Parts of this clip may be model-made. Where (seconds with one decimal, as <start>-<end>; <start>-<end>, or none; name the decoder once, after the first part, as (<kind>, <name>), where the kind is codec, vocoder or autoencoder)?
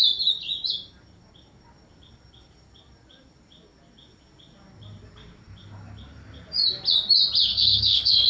7.5-8.3 (codec, SNAC)